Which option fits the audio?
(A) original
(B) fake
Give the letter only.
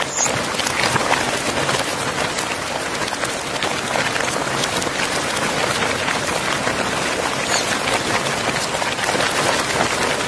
A